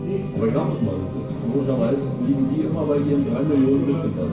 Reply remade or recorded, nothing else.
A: recorded